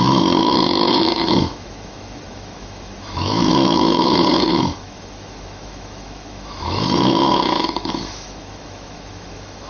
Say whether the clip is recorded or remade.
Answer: remade